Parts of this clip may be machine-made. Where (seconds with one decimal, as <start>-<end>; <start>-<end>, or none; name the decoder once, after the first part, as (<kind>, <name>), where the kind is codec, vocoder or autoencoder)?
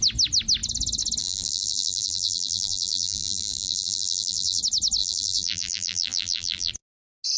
1.2-4.6 (vocoder, BigVGAN v2); 5.0-6.7